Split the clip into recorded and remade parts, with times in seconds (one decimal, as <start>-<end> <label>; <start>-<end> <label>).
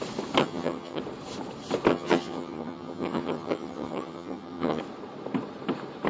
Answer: 0.0-0.4 recorded; 0.4-1.0 remade; 1.0-1.9 recorded; 1.9-4.8 remade; 4.8-6.1 recorded